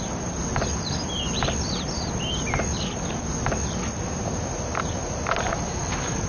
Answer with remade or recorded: recorded